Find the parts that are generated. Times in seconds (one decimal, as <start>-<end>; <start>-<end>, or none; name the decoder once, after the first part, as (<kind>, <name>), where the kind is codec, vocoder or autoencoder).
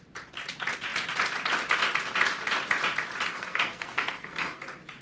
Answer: 3.3-4.6 (codec, SNAC)